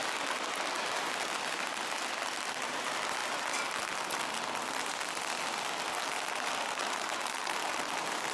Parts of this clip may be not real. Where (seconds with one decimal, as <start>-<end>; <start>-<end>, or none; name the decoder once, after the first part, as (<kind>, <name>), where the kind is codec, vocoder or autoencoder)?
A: 6.8-7.7 (vocoder, BigVGAN v2)

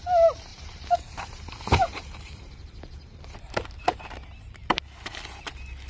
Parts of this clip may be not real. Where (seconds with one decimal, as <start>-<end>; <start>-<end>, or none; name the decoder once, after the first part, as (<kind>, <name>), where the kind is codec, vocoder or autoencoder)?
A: 0.5-4.0 (vocoder, BigVGAN v2); 4.6-5.2

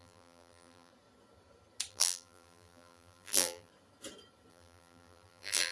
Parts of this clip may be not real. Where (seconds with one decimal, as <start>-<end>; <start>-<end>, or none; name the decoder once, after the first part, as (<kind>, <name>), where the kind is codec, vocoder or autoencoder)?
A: 0.0-0.9 (vocoder, BigVGAN v2); 1.9-3.7; 4.5-5.7

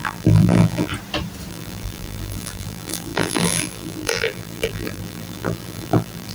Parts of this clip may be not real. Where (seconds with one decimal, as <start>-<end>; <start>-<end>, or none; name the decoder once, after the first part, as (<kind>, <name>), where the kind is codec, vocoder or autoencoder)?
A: 0.0-0.9 (vocoder, BigVGAN v2); 1.5-6.3

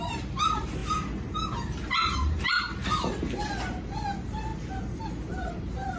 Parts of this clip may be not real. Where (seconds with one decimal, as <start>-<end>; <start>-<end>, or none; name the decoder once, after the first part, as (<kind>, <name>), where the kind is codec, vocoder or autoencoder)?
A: 0.0-0.8 (vocoder, BigVGAN v2); 1.9-4.5; 5.4-6.0